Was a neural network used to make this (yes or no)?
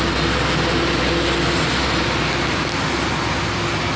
no